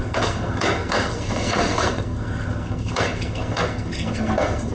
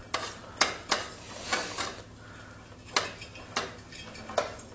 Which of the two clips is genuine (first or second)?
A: second